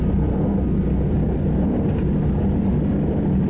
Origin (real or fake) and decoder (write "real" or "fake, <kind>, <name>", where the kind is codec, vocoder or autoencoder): real